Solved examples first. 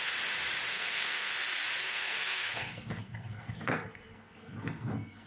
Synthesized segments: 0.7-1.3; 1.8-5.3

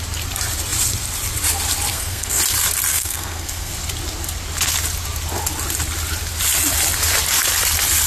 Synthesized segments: 1.9-2.4; 2.9-3.7

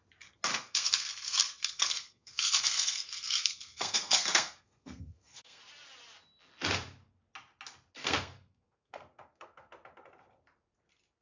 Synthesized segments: 0.5-5.6; 8.0-9.7